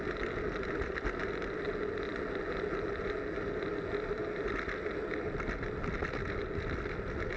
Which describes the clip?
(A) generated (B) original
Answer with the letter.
B